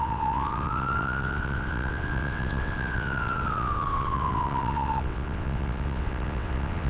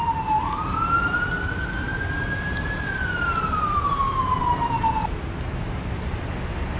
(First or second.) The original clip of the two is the second